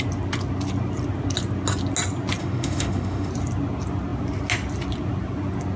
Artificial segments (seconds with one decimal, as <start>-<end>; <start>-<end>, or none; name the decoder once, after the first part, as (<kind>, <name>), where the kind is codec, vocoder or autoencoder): 2.4-3.3 (autoencoder, DAC-VAE)